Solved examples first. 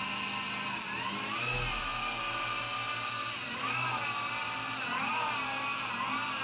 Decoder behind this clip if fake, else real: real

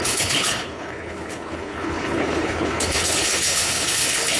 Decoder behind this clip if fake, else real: fake, codec, HILCodec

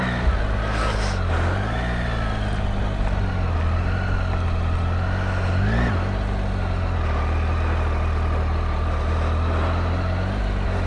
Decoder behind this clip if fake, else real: real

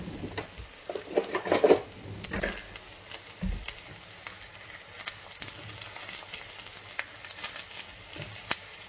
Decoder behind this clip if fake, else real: real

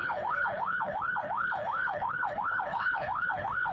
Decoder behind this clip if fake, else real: fake, codec, HILCodec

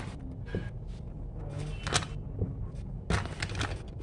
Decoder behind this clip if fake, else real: real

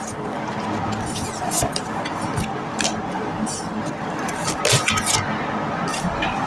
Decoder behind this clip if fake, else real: real